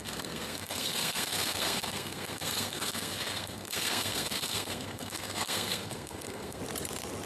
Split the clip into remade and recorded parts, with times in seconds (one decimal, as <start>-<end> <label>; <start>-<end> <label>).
0.0-6.6 remade; 6.6-7.3 recorded